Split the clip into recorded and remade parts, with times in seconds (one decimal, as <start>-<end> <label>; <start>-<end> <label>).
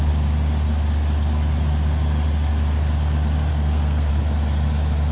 0.0-3.5 recorded; 3.5-4.1 remade; 4.1-5.1 recorded